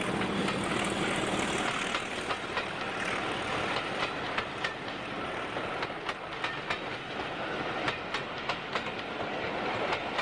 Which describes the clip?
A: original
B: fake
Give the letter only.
A